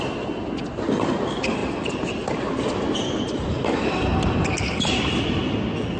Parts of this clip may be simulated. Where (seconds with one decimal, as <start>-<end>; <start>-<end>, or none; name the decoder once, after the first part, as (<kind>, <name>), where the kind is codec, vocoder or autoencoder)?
none